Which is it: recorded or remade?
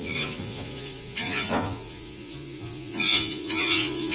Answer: remade